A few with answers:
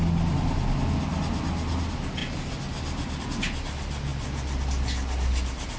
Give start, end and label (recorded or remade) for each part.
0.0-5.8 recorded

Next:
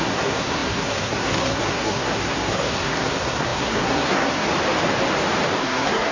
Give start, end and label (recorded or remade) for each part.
0.0-4.5 remade; 4.5-5.6 recorded; 5.6-6.1 remade

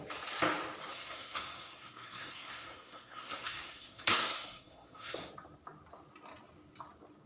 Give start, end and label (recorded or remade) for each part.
0.0-0.9 recorded; 0.9-5.3 remade; 5.3-7.3 recorded

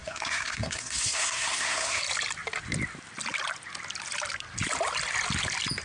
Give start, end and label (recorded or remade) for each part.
0.0-2.0 remade; 2.0-5.8 recorded

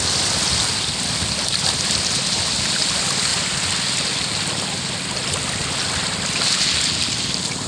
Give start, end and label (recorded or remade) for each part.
0.0-7.7 recorded

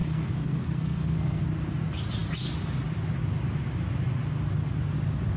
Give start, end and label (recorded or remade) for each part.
0.0-1.4 remade; 1.4-5.4 recorded

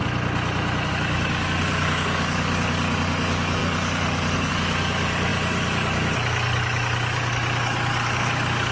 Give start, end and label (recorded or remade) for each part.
0.0-0.9 recorded; 0.9-8.7 remade